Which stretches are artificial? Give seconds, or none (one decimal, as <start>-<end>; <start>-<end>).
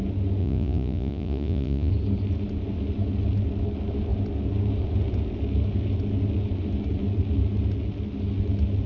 0.4-1.9